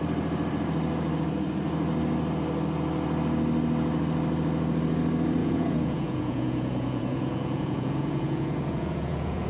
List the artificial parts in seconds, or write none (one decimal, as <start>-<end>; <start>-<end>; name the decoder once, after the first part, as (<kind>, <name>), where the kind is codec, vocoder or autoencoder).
5.4-9.5 (vocoder, Vocos)